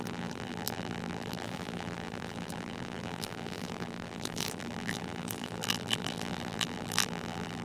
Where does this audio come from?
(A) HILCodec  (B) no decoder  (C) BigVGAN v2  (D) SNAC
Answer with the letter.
C